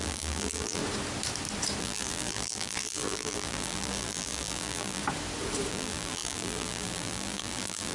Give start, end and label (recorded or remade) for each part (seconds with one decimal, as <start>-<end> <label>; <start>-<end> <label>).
0.0-0.8 remade; 0.8-1.8 recorded; 1.8-5.0 remade; 5.0-5.7 recorded; 5.7-7.9 remade